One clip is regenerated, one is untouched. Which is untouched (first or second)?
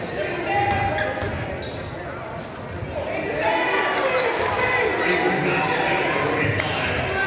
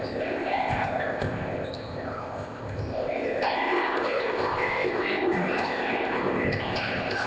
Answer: first